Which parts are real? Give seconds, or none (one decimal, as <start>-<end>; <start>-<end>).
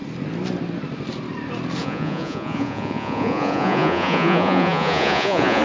0.0-1.8